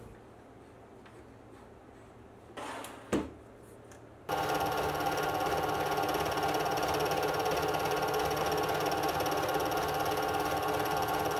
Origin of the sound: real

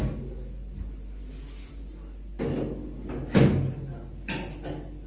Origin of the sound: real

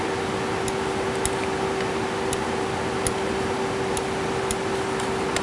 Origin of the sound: real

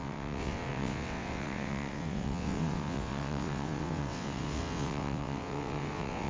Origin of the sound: fake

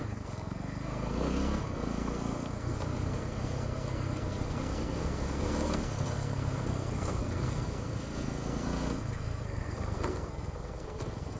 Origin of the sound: fake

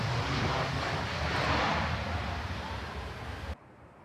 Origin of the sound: real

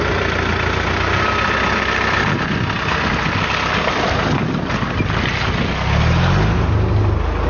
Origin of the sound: real